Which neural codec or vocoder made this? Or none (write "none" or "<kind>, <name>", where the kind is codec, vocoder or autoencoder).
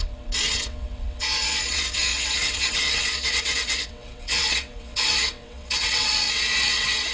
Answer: vocoder, WaveNeXt